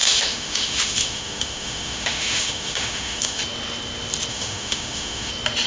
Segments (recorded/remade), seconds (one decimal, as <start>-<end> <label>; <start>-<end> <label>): 0.0-3.4 remade; 3.4-4.3 recorded; 4.3-5.3 remade; 5.3-5.7 recorded